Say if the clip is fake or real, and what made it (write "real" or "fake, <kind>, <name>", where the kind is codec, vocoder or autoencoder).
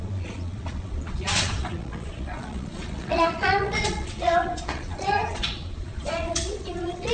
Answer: fake, vocoder, Vocos